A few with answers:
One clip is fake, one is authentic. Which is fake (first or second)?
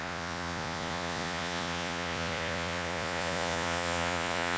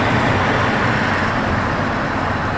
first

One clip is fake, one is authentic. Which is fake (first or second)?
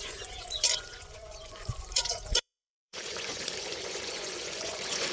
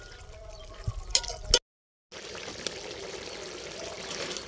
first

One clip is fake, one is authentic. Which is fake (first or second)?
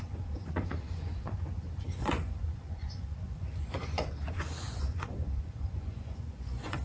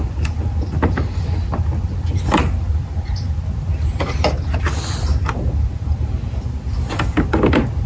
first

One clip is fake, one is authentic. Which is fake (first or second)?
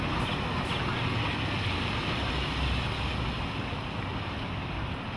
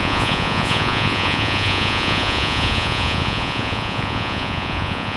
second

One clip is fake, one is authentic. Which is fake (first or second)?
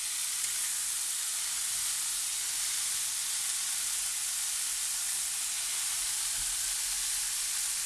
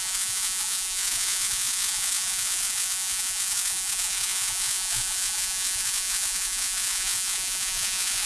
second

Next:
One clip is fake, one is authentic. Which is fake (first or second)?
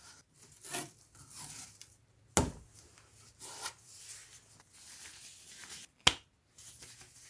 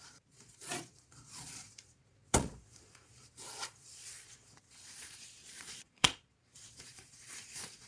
second